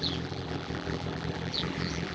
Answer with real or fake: fake